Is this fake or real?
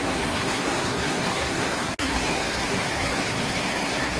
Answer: fake